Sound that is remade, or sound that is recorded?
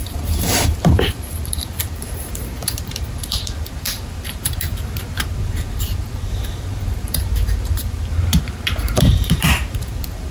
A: remade